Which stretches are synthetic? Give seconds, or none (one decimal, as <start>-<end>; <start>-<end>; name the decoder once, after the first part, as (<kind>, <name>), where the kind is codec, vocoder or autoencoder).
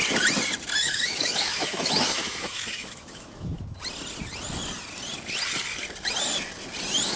0.8-3.8 (autoencoder, DAC-VAE)